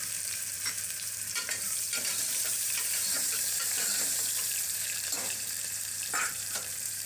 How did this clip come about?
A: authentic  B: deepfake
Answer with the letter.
B